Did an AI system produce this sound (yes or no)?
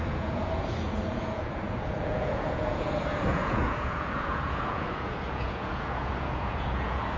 yes